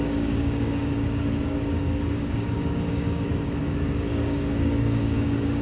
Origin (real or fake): fake